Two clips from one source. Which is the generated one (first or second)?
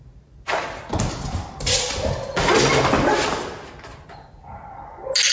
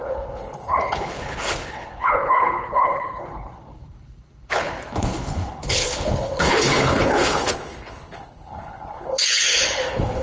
second